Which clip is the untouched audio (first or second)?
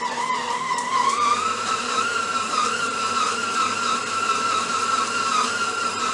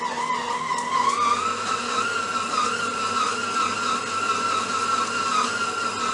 second